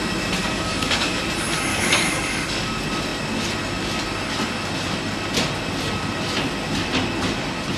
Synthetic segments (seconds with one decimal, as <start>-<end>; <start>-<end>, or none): 0.4-1.2; 1.7-2.7